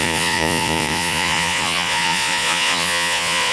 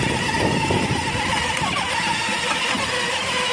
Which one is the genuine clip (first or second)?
second